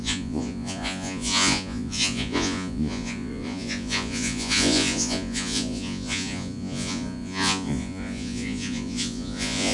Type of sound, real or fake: fake